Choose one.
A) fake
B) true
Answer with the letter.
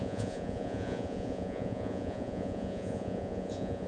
A